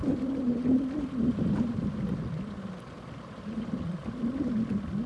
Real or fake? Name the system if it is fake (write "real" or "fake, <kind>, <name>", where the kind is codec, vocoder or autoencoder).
real